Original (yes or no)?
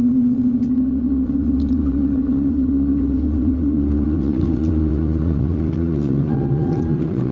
no